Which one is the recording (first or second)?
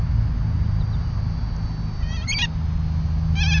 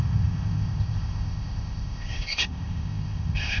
first